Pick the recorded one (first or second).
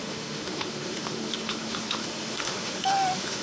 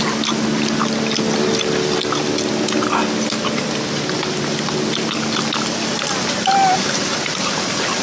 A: second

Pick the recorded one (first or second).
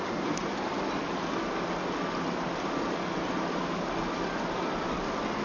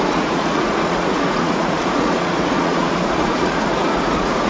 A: first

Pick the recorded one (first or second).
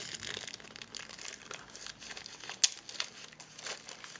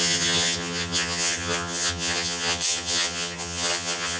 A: first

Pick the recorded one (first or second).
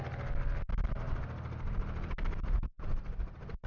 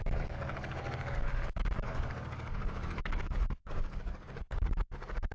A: first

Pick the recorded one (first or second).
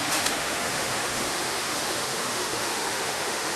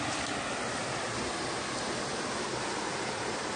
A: second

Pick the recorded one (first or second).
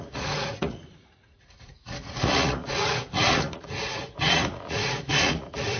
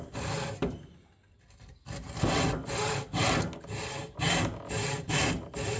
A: second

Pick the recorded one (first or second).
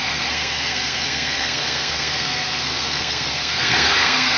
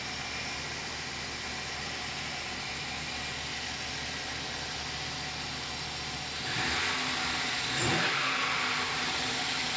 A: second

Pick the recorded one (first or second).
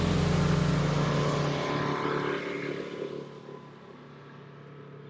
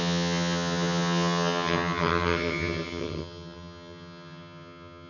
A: first